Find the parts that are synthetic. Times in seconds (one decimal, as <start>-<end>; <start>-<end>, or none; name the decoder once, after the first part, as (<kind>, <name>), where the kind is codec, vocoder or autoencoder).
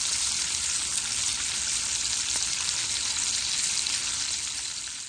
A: none